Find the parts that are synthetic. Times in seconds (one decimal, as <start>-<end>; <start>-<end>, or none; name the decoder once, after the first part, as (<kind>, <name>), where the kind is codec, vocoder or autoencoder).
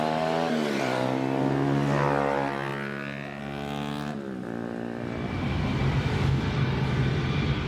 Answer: none